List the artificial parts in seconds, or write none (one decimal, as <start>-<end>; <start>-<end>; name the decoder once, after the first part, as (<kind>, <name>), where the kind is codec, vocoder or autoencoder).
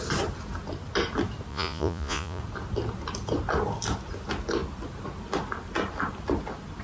1.5-2.4 (vocoder, Vocos)